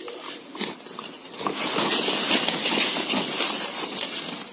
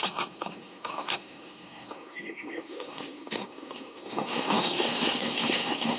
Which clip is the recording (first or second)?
first